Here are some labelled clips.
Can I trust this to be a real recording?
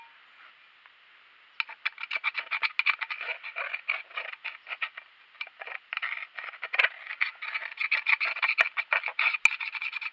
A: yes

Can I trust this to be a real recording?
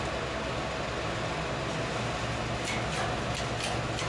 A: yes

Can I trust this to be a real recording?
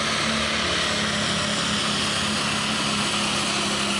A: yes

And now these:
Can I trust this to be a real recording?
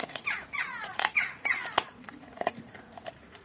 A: no